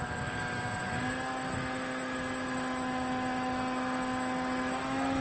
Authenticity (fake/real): fake